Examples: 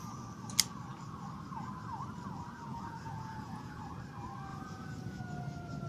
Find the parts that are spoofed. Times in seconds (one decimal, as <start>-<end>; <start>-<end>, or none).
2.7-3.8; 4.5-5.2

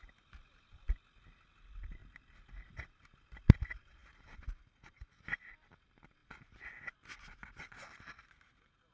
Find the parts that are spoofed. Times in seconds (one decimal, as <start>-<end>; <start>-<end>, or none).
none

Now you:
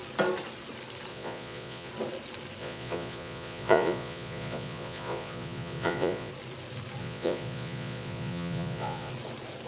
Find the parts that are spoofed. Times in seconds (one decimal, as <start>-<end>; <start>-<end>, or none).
1.1-1.9; 2.6-6.3; 7.0-9.1